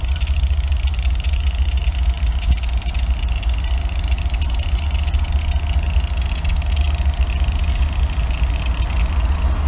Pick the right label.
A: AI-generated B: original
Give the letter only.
B